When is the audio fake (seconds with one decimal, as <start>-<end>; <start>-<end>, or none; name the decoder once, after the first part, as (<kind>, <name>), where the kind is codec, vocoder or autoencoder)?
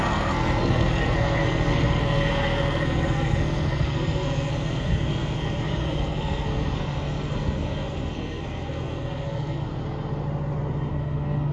0.0-9.7 (codec, SNAC); 10.9-11.5